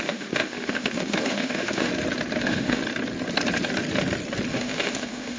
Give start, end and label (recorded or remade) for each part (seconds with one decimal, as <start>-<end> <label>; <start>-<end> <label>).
0.0-1.9 remade; 1.9-2.4 recorded; 2.4-2.8 remade; 2.8-4.5 recorded; 4.5-5.4 remade

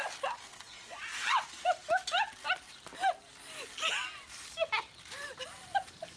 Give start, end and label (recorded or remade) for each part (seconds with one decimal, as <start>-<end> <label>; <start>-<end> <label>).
0.0-0.5 recorded; 0.5-1.0 remade; 1.0-6.2 recorded

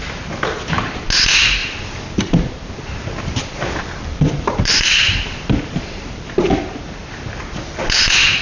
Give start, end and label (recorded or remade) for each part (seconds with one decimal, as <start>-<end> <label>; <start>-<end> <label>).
0.0-1.6 recorded; 1.6-6.5 remade; 6.5-8.4 recorded

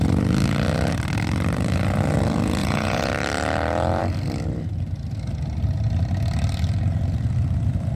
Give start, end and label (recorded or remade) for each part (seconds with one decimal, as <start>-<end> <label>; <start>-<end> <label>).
0.0-2.6 recorded; 2.6-3.1 remade; 3.1-7.9 recorded

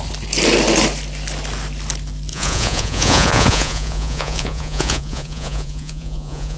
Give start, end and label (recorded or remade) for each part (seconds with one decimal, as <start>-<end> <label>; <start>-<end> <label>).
0.0-2.3 recorded; 2.3-6.6 remade